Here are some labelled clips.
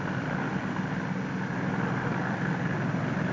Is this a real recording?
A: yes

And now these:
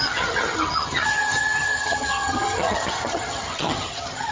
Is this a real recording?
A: no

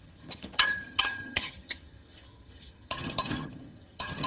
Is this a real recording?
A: no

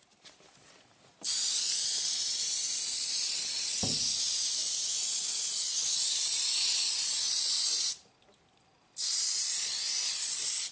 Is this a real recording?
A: yes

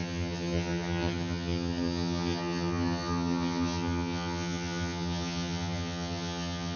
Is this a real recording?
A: no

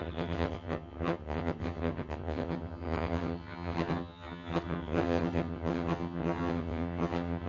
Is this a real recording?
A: no